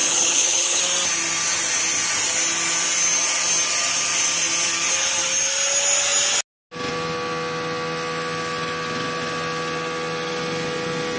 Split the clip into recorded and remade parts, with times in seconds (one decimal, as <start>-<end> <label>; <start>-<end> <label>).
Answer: 0.0-0.8 remade; 0.8-11.2 recorded